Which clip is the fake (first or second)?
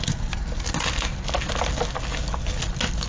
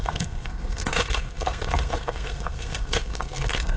second